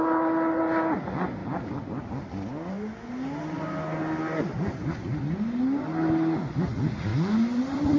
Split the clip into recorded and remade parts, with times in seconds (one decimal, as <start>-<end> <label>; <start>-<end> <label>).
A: 0.0-7.1 recorded; 7.1-8.0 remade